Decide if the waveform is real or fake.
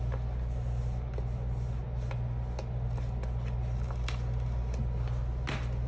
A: real